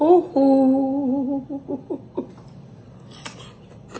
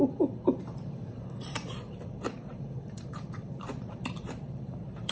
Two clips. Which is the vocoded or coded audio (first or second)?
second